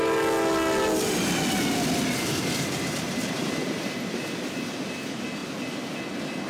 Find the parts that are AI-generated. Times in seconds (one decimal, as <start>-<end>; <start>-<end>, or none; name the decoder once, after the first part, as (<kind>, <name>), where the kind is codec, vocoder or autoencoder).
none